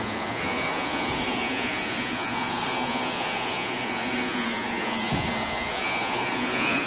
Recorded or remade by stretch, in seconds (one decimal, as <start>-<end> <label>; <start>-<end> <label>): 0.0-6.9 remade